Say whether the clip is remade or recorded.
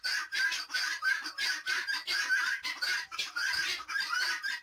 remade